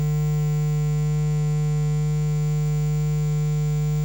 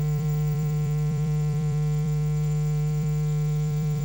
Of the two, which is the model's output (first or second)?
second